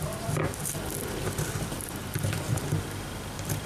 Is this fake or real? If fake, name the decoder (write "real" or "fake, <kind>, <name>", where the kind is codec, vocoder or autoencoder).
fake, vocoder, BigVGAN v2